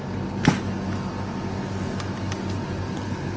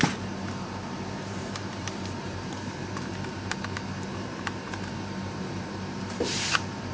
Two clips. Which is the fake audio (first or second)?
second